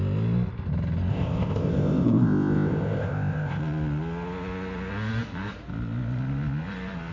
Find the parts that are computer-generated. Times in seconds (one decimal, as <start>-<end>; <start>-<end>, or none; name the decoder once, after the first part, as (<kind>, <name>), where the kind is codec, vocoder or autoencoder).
1.1-3.6 (codec, ZipCodec)